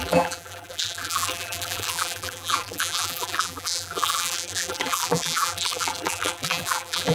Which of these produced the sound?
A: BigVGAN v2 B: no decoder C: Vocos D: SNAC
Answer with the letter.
A